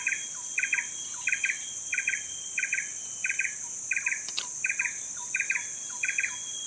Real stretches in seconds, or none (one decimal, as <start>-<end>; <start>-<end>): 0.0-6.7